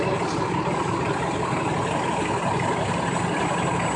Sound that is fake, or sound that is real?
real